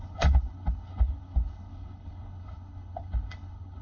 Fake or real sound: fake